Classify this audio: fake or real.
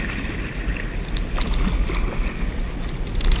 real